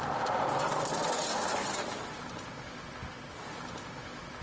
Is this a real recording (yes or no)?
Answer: yes